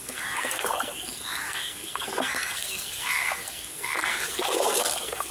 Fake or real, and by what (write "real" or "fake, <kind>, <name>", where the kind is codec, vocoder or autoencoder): fake, codec, SNAC